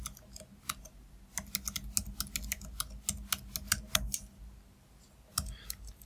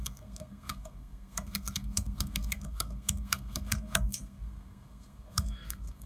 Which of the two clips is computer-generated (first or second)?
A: second